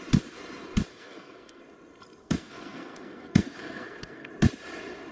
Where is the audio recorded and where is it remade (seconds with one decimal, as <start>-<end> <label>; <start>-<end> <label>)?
0.0-0.9 recorded; 0.9-1.6 remade; 1.6-2.2 recorded; 2.2-4.3 remade; 4.3-5.1 recorded